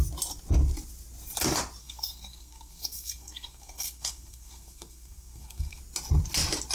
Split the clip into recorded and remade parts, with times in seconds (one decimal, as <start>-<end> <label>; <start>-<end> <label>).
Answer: 0.0-1.8 recorded; 1.8-5.8 remade; 5.8-6.7 recorded